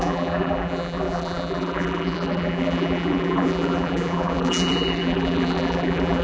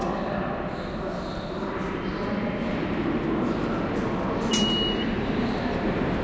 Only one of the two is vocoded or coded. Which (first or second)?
first